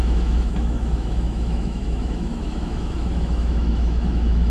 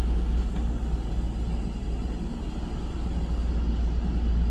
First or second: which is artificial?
first